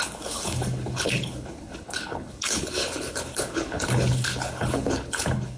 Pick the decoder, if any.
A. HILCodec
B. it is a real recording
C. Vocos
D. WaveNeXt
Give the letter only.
A